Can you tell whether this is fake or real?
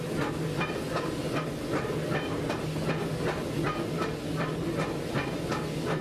real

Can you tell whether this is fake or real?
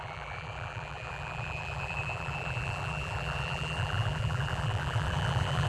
fake